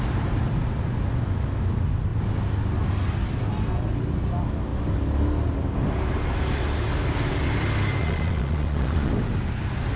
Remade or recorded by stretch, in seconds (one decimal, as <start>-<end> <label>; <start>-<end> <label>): 0.0-8.0 recorded; 8.0-9.1 remade; 9.1-10.0 recorded